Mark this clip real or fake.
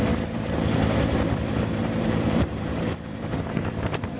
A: fake